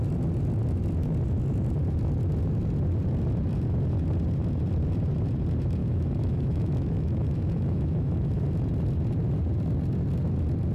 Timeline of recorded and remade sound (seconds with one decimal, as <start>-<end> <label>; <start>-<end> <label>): 0.0-5.8 recorded; 5.8-8.4 remade; 8.4-10.7 recorded